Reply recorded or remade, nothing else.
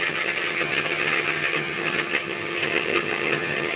remade